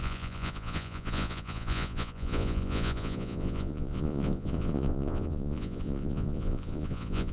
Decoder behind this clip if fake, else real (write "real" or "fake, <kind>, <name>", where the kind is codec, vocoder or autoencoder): fake, vocoder, Vocos